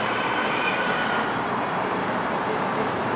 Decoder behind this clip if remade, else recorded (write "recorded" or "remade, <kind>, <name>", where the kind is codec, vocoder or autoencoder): recorded